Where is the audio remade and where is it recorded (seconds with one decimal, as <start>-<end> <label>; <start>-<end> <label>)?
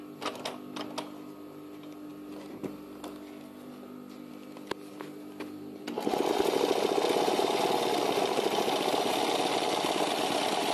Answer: 0.0-10.7 recorded